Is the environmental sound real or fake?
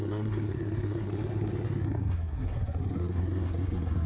fake